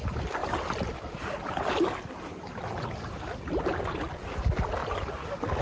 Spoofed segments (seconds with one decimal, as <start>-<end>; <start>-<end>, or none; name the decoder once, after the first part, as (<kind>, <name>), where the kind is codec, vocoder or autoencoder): none